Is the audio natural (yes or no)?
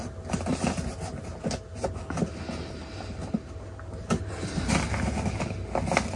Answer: yes